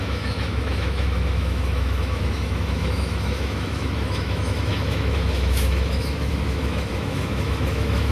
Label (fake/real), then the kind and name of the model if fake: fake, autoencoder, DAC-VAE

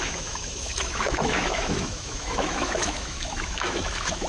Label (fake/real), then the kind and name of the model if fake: fake, autoencoder, DAC-VAE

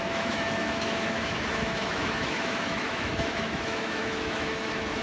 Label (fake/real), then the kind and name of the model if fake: fake, autoencoder, DAC-VAE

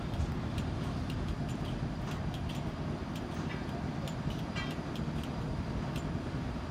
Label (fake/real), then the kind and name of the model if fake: real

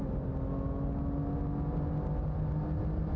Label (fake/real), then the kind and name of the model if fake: real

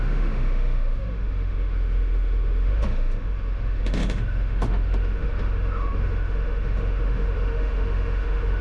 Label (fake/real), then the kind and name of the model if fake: fake, autoencoder, DAC-VAE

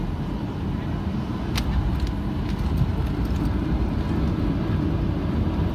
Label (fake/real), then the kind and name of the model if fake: real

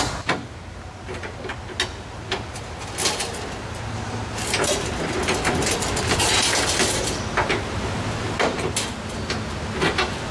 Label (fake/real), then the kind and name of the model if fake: real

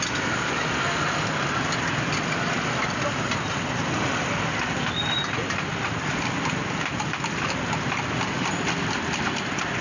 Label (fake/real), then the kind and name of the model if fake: real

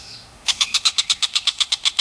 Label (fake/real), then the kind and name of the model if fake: fake, autoencoder, DAC-VAE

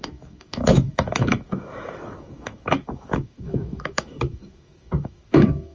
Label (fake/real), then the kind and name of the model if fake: fake, autoencoder, DAC-VAE